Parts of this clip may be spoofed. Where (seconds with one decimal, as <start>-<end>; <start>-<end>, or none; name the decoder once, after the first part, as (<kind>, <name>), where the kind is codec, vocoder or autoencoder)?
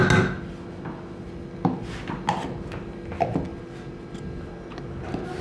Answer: none